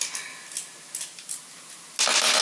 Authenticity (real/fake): real